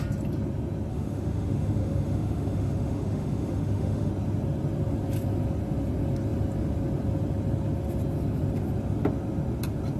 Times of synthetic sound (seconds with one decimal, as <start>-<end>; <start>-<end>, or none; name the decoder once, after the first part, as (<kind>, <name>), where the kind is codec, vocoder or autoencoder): 0.9-4.1 (autoencoder, DAC-VAE)